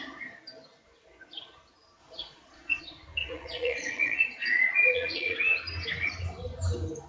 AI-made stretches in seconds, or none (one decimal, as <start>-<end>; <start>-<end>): 2.0-2.8; 3.2-5.4